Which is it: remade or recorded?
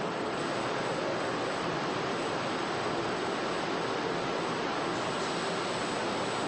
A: recorded